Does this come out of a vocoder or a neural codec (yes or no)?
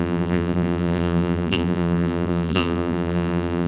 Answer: yes